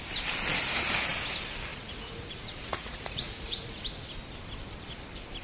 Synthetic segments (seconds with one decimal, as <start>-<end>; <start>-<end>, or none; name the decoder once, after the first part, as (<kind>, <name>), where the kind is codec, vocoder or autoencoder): 1.7-3.8 (vocoder, Vocos)